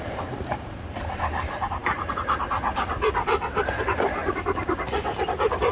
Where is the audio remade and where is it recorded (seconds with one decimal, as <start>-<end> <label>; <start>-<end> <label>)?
0.0-4.2 recorded; 4.2-5.2 remade; 5.2-5.7 recorded